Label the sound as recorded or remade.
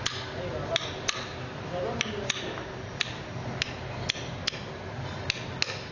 recorded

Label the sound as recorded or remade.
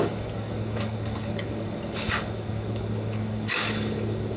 remade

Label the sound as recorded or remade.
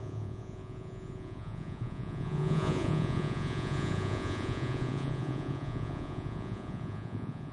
remade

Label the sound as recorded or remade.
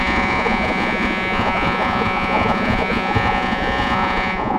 remade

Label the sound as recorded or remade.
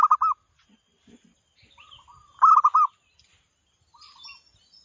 recorded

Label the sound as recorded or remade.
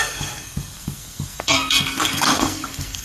remade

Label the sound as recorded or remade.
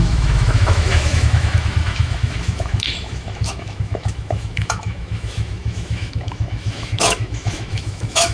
remade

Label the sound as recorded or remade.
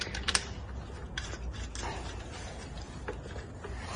recorded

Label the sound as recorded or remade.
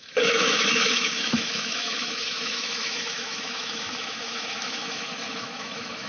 remade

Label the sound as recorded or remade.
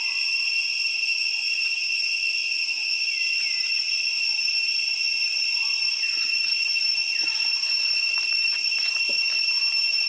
recorded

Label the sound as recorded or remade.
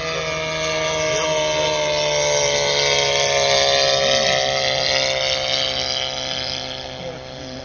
recorded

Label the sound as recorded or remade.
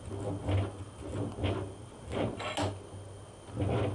recorded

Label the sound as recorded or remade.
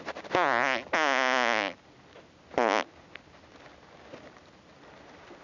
recorded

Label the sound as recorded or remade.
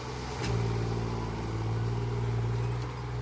recorded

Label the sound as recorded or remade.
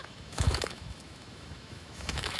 remade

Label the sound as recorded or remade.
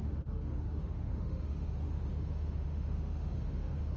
remade